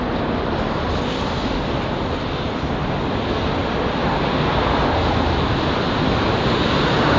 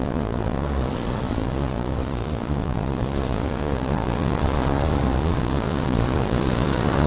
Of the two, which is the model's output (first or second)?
second